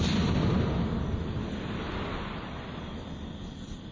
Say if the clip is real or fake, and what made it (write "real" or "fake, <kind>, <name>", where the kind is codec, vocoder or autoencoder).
real